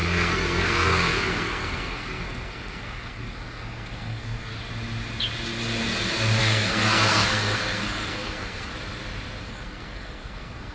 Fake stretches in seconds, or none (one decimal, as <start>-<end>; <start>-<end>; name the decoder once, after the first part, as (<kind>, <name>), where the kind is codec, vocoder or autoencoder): 0.0-4.5 (codec, SNAC); 6.4-8.7; 9.4-10.7